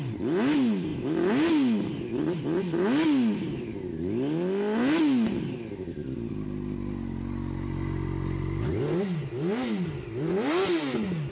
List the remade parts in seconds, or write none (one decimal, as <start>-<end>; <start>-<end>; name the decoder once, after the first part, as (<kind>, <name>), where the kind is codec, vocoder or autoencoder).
none